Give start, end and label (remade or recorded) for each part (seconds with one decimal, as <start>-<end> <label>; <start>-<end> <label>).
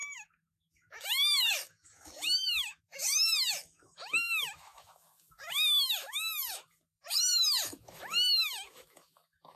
0.0-9.6 remade